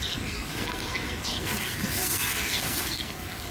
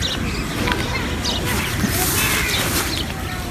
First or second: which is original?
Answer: second